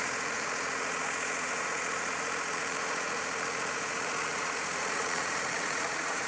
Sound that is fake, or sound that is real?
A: fake